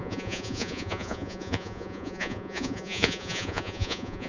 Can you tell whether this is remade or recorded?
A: remade